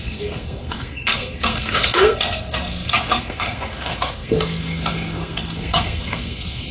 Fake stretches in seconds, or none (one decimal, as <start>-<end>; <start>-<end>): 0.0-6.7